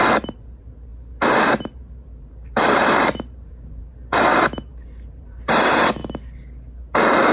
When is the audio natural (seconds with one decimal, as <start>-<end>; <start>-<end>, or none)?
0.9-1.5; 3.9-4.7; 6.0-7.3